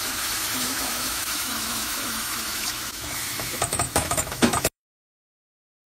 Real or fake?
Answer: fake